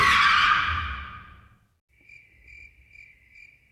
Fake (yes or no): no